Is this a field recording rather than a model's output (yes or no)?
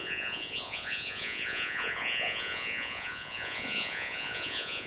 no